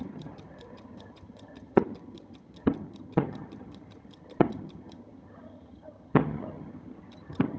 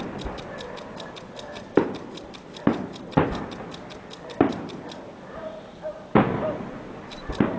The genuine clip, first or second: second